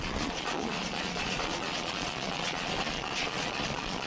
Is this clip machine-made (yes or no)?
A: yes